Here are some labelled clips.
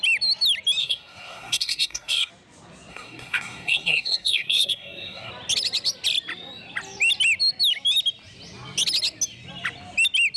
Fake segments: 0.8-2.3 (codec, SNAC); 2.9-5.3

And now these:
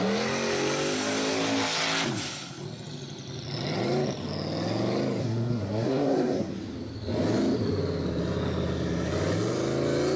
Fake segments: 5.2-6.5 (codec, SNAC)

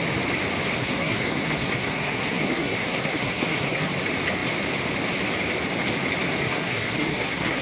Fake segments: 0.8-3.9 (codec, SNAC); 6.4-7.6